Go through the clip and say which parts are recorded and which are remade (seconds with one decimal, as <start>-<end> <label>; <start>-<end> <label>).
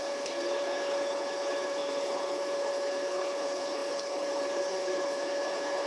0.0-5.9 remade